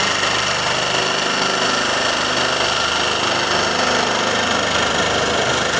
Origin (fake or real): real